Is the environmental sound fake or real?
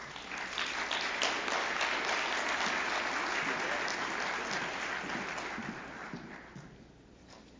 real